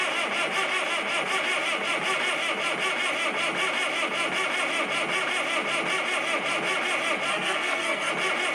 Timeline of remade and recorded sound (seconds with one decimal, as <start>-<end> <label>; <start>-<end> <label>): 0.0-7.3 recorded; 7.3-8.1 remade; 8.1-8.5 recorded